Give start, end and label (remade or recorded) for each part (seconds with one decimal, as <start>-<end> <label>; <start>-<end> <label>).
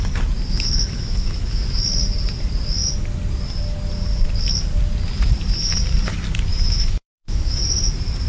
0.0-0.5 recorded; 0.5-1.9 remade; 1.9-6.5 recorded; 6.5-7.6 remade; 7.6-8.3 recorded